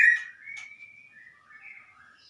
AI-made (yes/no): no